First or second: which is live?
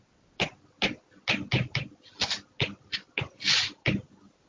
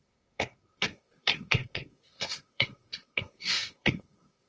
first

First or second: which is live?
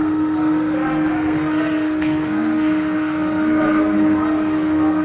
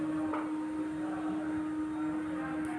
second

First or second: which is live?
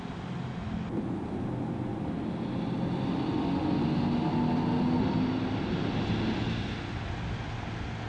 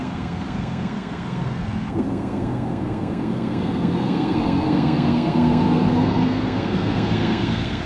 first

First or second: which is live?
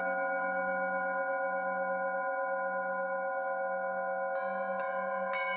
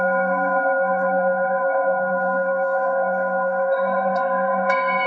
first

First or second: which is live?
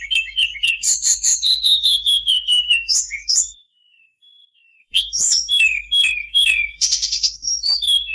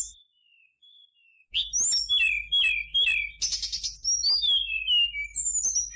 second